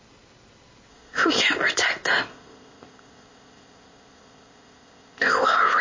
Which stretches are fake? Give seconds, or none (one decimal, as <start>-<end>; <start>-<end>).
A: 0.9-1.4; 2.3-5.8